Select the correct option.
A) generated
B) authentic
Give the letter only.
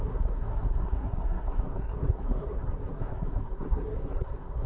A